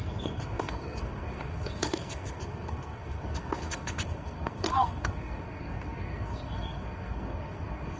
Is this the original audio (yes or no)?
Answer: no